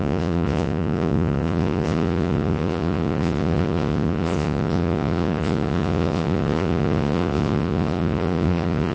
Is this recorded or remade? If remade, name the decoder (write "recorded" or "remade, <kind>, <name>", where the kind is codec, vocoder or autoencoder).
remade, vocoder, Vocos